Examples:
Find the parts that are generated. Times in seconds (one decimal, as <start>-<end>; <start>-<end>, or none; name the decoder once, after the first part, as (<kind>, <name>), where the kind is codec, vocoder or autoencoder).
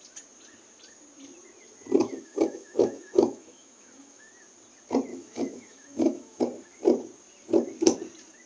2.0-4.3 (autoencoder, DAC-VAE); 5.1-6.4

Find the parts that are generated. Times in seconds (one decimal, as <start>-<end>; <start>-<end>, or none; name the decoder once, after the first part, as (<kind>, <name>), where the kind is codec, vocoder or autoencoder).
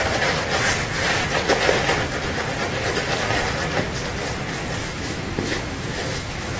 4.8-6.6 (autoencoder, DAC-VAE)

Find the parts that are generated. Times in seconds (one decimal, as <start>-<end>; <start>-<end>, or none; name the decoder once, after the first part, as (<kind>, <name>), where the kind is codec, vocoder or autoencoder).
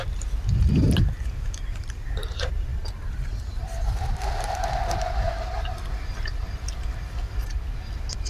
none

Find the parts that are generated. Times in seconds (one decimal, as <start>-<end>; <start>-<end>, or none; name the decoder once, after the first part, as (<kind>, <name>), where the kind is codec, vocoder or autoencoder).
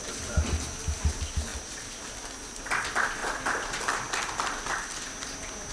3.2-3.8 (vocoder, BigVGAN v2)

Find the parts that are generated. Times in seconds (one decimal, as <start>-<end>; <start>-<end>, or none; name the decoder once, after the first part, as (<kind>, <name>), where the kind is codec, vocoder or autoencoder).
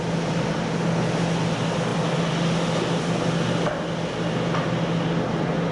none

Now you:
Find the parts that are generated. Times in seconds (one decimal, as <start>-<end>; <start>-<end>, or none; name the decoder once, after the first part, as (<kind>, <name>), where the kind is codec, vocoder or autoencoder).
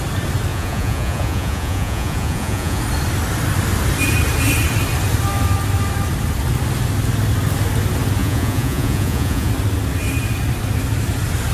0.5-2.8 (vocoder, Vocos); 8.2-9.5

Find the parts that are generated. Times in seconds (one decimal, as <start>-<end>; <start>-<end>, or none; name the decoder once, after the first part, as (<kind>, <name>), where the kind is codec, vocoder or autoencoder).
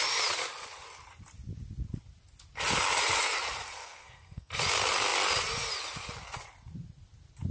3.8-4.5 (codec, SNAC)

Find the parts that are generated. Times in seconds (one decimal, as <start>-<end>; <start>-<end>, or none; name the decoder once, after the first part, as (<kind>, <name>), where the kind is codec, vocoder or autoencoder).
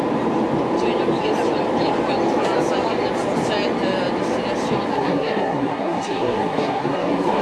4.9-7.4 (codec, SNAC)